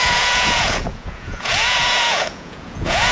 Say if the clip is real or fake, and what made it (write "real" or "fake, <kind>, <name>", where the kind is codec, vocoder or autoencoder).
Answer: fake, vocoder, Vocos